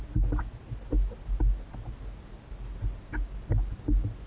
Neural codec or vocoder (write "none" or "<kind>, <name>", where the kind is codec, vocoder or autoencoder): none